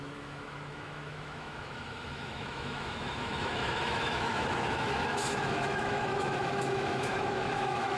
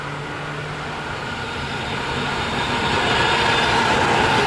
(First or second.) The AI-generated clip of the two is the first